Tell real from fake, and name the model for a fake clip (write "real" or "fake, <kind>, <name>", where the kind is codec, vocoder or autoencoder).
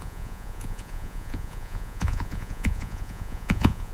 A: fake, vocoder, Vocos